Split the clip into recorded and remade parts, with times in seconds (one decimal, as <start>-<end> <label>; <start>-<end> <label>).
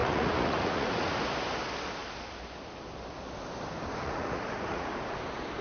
0.0-1.1 remade; 1.1-4.0 recorded; 4.0-4.9 remade; 4.9-5.6 recorded